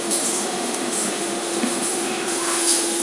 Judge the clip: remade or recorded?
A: remade